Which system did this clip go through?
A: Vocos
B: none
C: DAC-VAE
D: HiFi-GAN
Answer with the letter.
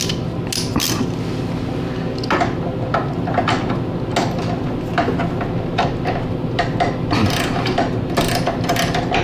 B